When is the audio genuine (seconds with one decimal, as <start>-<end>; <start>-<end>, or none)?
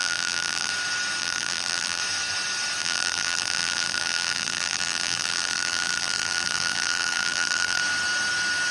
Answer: 0.7-1.2; 2.0-2.8; 7.8-8.7